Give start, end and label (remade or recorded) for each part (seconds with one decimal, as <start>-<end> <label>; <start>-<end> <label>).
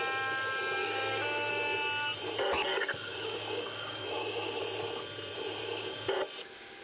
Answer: 0.0-0.8 recorded; 0.8-1.5 remade; 1.5-2.7 recorded; 2.7-4.6 remade; 4.6-6.8 recorded